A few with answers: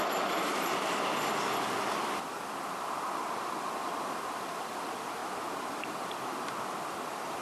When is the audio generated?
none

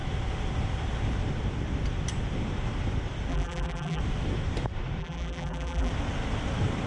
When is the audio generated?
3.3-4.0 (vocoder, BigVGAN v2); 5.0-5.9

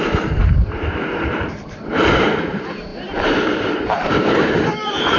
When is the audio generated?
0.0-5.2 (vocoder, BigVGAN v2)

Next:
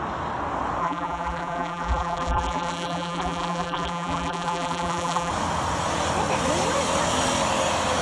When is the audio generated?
0.8-5.3 (vocoder, BigVGAN v2)

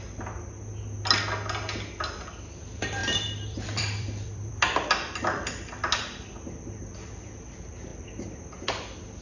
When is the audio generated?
3.0-4.5 (vocoder, BigVGAN v2)